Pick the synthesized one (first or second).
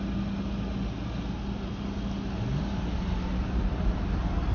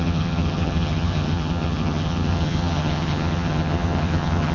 second